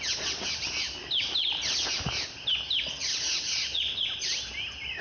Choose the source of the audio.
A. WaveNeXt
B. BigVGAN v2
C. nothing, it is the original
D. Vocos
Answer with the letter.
C